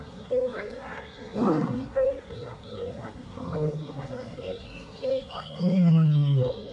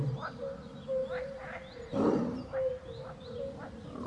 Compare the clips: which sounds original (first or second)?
second